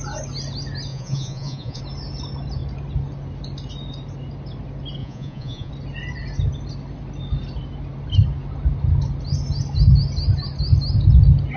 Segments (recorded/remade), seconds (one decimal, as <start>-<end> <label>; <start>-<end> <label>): 0.0-0.9 recorded; 0.9-1.8 remade; 1.8-5.0 recorded; 5.0-5.7 remade; 5.7-11.6 recorded